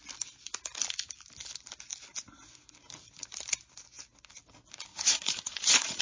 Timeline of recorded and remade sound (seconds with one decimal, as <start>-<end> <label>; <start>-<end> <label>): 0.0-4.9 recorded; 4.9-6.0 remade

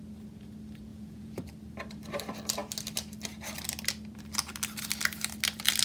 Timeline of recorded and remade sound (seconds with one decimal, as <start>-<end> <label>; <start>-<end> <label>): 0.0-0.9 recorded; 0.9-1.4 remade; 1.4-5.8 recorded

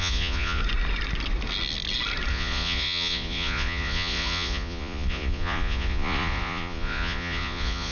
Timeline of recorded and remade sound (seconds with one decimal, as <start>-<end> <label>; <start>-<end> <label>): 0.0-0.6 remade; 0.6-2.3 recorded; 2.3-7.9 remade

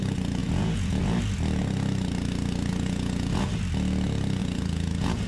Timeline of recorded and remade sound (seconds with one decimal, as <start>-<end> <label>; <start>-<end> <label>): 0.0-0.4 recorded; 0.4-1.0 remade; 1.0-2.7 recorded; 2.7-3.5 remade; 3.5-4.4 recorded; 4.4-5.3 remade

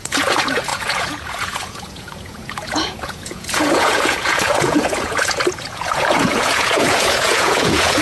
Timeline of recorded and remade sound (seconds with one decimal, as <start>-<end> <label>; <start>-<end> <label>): 0.0-8.0 remade

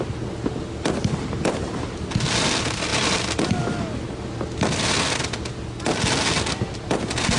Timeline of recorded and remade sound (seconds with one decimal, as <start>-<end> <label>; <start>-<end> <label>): 0.0-7.4 recorded

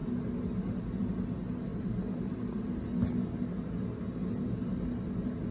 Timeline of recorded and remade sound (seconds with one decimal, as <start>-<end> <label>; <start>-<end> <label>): 0.0-5.5 recorded

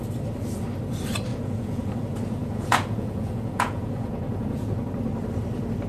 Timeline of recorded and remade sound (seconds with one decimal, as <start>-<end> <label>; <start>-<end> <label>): 0.0-1.3 recorded; 1.3-2.0 remade; 2.0-2.4 recorded; 2.4-4.8 remade; 4.8-5.9 recorded